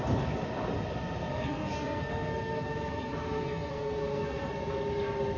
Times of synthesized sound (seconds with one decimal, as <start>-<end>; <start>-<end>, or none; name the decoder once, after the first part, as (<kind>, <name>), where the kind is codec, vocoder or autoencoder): 1.3-4.5 (codec, SNAC)